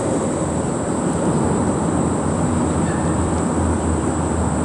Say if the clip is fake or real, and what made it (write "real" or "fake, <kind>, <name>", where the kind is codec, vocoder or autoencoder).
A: fake, vocoder, BigVGAN v2